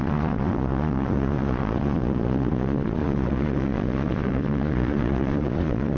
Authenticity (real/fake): fake